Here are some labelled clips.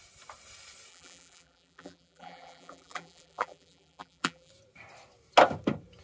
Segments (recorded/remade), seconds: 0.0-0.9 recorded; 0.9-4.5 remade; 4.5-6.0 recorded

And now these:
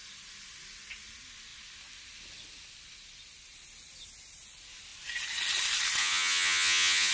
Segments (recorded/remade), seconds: 0.0-6.0 recorded; 6.0-7.1 remade